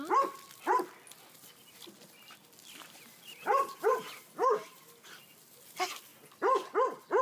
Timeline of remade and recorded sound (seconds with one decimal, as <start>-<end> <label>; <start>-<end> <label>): 0.0-3.3 recorded; 3.3-4.8 remade; 4.8-7.2 recorded